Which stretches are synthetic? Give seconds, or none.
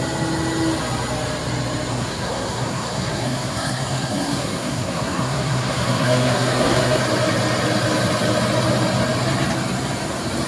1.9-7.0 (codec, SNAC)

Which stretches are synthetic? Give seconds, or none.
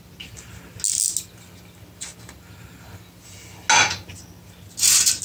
none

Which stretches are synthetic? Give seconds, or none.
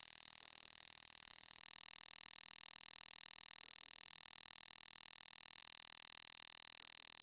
none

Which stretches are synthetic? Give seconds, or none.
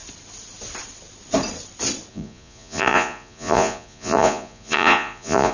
2.1-5.5 (vocoder, Vocos)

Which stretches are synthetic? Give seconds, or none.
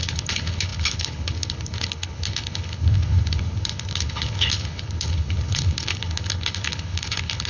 0.0-7.5 (codec, HILCodec)